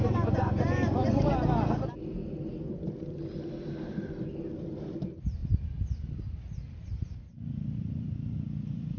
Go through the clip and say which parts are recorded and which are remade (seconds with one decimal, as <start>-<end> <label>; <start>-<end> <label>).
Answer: 0.0-9.0 recorded